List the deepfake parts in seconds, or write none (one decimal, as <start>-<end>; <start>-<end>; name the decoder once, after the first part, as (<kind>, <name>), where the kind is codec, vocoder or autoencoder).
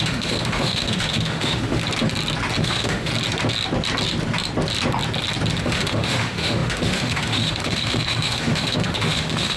0.0-1.8 (autoencoder, DAC-VAE); 2.6-3.1; 5.6-9.6